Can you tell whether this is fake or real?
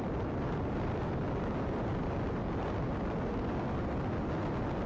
real